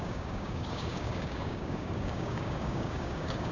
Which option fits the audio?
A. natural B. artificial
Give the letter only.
B